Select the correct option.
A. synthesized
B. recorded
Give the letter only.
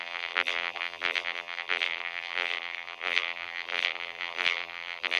A